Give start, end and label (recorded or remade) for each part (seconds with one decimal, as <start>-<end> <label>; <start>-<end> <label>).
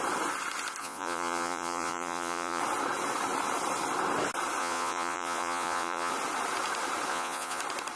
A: 0.0-0.8 recorded; 0.8-2.6 remade; 2.6-4.6 recorded; 4.6-6.1 remade; 6.1-7.1 recorded; 7.1-7.6 remade; 7.6-8.0 recorded